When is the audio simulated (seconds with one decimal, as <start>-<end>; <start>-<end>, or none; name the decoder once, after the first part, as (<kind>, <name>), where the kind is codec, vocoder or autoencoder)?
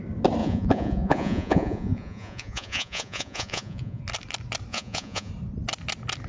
0.4-4.0 (vocoder, Vocos); 4.7-5.3